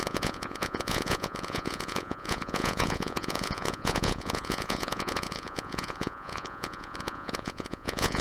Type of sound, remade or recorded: remade